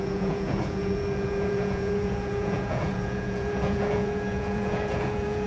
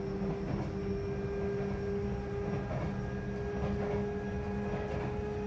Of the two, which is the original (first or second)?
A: second